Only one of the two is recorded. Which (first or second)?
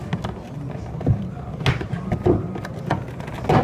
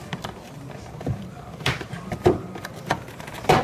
first